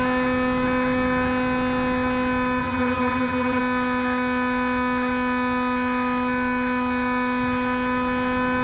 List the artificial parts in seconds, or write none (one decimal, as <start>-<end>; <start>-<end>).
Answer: 2.6-3.6

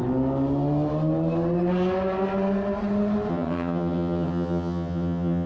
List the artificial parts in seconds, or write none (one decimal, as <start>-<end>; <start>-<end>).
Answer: 3.3-5.5

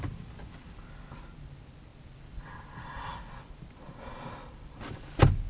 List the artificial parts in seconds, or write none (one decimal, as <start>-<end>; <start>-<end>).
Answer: none

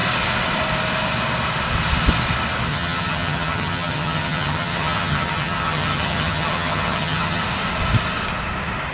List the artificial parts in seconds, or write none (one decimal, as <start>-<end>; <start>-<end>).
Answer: 2.7-7.4

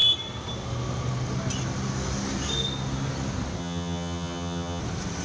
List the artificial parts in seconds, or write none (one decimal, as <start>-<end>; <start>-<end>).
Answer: 3.6-4.8

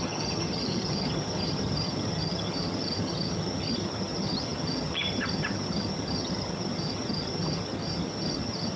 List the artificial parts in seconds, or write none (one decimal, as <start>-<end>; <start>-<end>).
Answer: 0.0-8.8

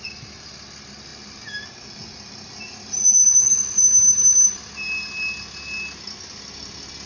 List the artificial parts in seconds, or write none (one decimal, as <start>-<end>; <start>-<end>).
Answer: none